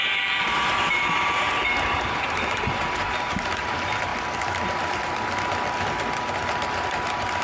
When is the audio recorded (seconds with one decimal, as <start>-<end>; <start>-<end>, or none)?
4.1-6.9